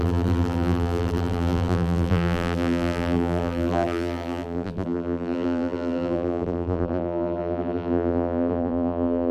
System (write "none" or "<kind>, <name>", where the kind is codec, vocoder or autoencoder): vocoder, BigVGAN v2